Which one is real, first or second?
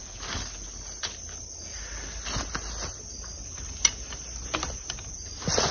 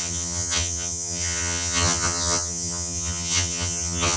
first